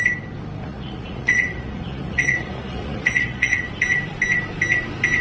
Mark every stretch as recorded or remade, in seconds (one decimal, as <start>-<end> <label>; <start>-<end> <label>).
0.0-0.6 recorded; 0.6-3.7 remade; 3.7-5.2 recorded